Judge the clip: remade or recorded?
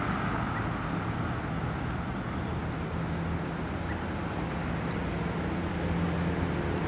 recorded